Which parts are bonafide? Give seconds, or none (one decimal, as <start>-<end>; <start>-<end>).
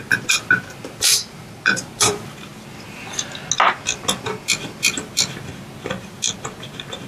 2.5-7.1